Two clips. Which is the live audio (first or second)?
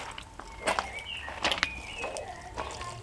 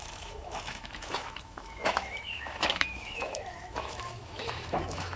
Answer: first